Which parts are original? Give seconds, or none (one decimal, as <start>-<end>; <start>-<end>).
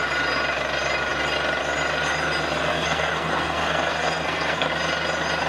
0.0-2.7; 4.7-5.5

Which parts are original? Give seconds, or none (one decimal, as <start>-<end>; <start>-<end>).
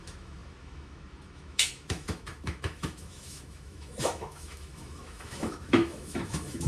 none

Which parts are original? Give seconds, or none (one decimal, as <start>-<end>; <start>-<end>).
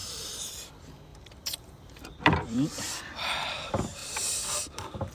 0.7-1.1; 3.0-4.0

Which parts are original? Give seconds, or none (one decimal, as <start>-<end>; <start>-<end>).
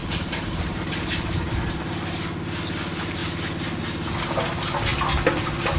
0.9-5.8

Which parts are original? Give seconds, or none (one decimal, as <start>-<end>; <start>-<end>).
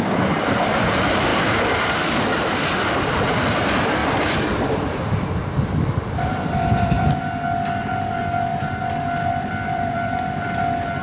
7.2-7.8; 8.5-9.3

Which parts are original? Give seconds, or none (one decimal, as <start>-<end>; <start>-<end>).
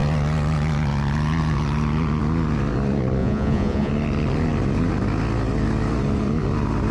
0.0-3.2; 3.9-6.9